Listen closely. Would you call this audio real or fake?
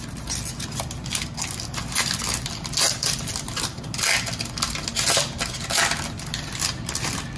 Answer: real